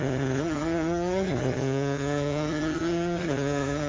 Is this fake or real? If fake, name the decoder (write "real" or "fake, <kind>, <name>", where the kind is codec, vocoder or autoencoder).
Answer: fake, vocoder, HiFi-GAN